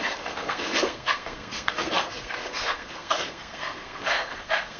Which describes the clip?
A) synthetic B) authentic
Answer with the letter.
A